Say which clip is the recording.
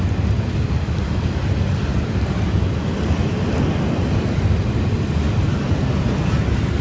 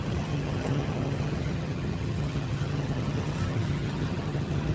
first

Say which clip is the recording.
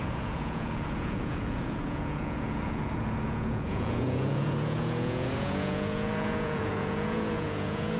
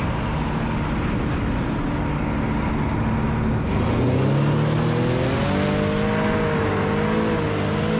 second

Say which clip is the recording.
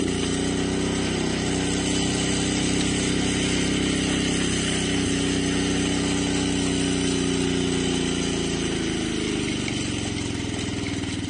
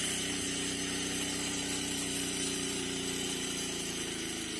first